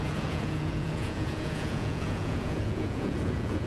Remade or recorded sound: remade